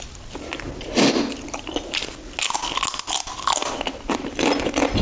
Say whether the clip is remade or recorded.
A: recorded